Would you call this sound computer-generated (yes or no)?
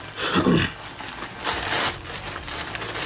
no